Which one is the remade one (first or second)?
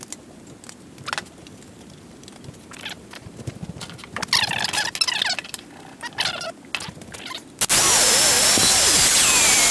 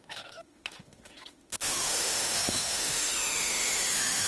second